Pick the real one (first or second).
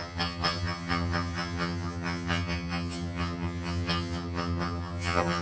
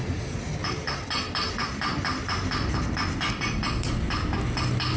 second